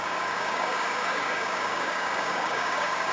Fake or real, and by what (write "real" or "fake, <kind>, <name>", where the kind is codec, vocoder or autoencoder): fake, codec, DAC